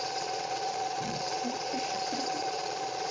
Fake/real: fake